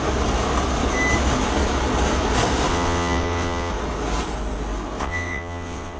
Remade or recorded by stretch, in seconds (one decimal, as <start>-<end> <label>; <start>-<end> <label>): 0.0-2.7 recorded; 2.7-3.7 remade; 3.7-5.0 recorded; 5.0-6.0 remade

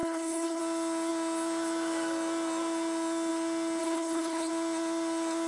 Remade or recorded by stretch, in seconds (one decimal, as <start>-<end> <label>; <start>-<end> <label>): 0.0-0.6 remade; 0.6-3.8 recorded; 3.8-4.5 remade; 4.5-5.5 recorded

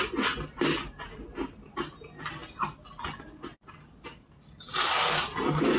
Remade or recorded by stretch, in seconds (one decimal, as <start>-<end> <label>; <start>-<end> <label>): 0.0-5.8 recorded